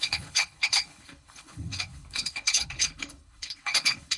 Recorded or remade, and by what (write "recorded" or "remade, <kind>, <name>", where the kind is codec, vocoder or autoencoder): remade, codec, HILCodec